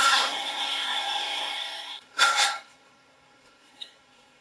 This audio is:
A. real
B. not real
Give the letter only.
B